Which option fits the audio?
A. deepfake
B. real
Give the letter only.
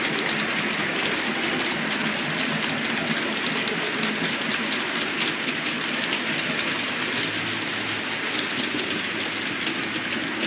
B